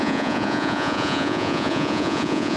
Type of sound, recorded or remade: remade